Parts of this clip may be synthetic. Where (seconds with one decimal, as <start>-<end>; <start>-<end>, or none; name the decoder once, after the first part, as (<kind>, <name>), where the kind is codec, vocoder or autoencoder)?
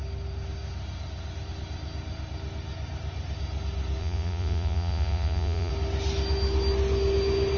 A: 4.0-5.7 (vocoder, Vocos)